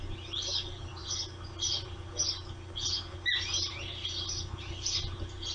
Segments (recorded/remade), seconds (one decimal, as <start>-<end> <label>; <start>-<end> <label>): 0.0-5.5 recorded